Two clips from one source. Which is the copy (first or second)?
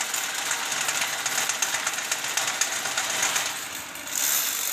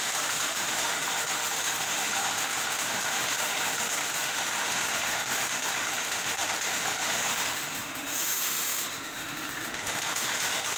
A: second